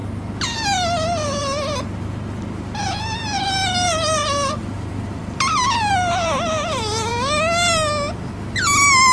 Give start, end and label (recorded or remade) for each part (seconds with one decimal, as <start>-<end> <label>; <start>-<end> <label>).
0.0-2.8 recorded; 2.8-7.1 remade; 7.1-9.1 recorded